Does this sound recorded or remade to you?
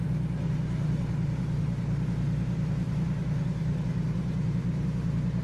remade